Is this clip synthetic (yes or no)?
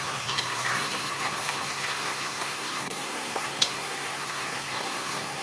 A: yes